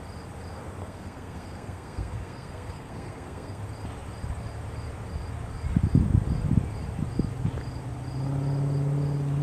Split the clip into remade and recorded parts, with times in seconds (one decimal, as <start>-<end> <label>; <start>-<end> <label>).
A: 0.0-0.8 recorded; 0.8-3.6 remade; 3.6-9.4 recorded

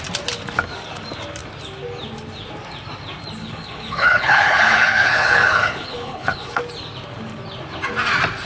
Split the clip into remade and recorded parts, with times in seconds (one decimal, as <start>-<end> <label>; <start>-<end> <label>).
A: 0.0-3.4 recorded; 3.4-6.6 remade; 6.6-8.5 recorded

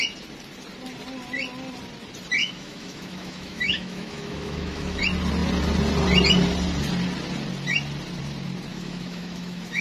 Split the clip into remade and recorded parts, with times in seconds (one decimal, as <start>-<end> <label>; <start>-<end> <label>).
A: 0.0-2.4 recorded; 2.4-5.0 remade; 5.0-8.7 recorded; 8.7-9.8 remade

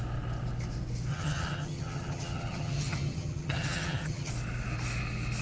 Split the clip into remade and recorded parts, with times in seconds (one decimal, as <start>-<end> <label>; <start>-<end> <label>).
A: 0.0-1.1 recorded; 1.1-4.3 remade; 4.3-5.4 recorded

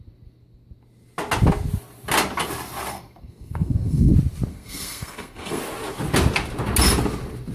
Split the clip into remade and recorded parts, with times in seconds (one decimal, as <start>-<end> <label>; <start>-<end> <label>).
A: 0.0-2.9 recorded; 2.9-4.1 remade; 4.1-4.5 recorded; 4.5-5.6 remade; 5.6-7.5 recorded

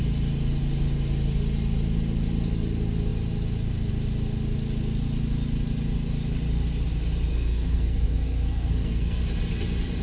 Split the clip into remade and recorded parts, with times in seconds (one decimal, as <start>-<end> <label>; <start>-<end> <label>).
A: 0.0-7.3 recorded; 7.3-9.2 remade; 9.2-10.0 recorded